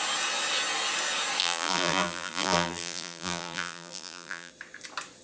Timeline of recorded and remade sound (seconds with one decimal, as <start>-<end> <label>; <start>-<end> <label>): 0.0-1.4 recorded; 1.4-4.5 remade; 4.5-5.2 recorded